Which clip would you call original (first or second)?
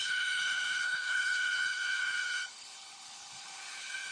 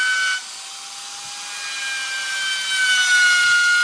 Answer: second